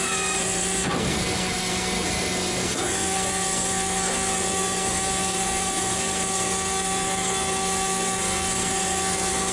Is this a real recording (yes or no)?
no